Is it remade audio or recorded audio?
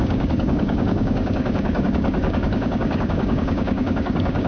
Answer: remade